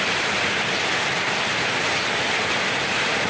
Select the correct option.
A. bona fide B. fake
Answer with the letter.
B